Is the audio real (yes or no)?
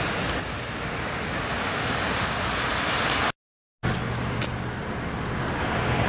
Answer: yes